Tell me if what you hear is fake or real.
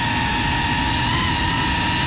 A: real